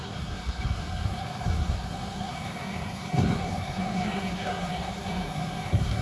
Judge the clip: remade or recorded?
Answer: remade